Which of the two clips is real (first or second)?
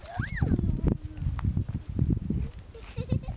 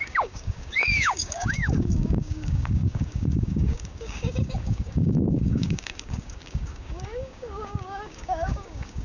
first